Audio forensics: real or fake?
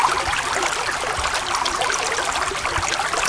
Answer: real